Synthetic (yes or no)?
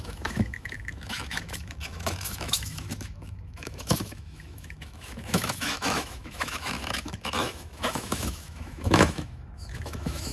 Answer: yes